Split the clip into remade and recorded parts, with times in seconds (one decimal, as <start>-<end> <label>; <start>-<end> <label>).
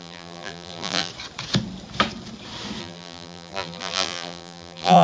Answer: 0.0-1.1 remade; 1.1-2.8 recorded; 2.8-5.0 remade